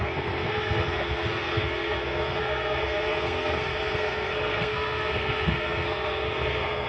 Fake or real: fake